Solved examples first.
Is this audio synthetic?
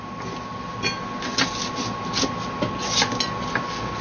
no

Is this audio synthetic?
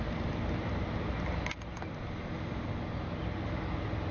no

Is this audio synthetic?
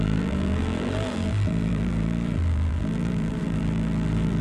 yes